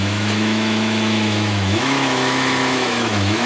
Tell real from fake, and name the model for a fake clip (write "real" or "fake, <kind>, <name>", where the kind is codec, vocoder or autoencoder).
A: fake, autoencoder, DAC-VAE